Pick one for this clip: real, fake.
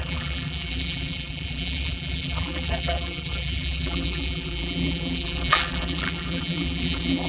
fake